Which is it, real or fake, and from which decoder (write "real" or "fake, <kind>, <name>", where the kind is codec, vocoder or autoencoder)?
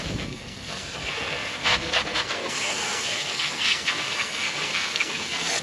fake, codec, SNAC